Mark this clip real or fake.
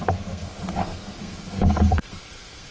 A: fake